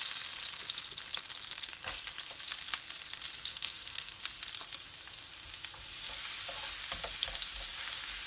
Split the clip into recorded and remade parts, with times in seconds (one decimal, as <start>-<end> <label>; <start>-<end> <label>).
0.0-3.5 recorded; 3.5-4.2 remade; 4.2-8.3 recorded